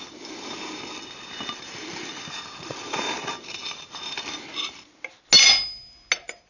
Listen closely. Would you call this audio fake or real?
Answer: real